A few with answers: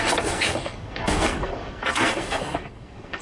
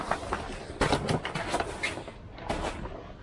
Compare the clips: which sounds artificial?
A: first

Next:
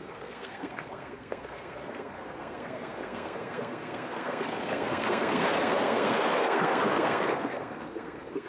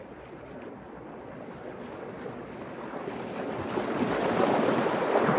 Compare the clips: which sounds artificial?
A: first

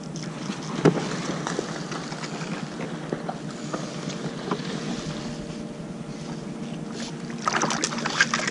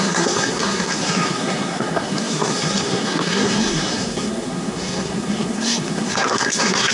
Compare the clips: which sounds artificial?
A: second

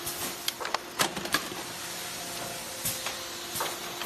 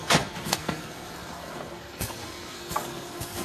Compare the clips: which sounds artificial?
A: second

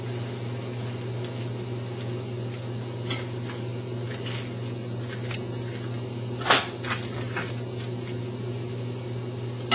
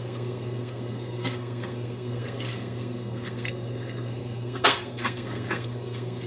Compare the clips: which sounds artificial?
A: second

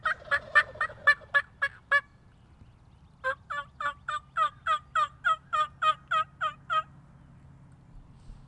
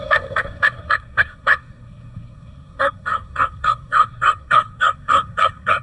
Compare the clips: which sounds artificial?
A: second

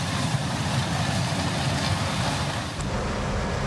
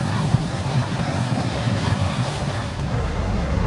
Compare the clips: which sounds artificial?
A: second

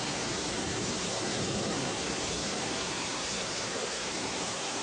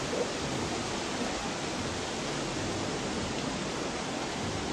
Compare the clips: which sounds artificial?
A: first